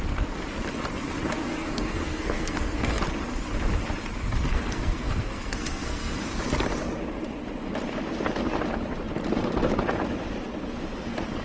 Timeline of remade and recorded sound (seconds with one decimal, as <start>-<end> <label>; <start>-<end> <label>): 0.0-1.5 recorded; 1.5-3.0 remade; 3.0-4.5 recorded; 4.5-6.1 remade; 6.1-11.4 recorded